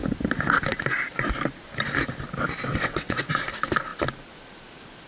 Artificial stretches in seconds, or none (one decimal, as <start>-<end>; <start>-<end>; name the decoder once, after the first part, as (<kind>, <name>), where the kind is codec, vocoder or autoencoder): 2.7-3.3 (vocoder, WaveNeXt)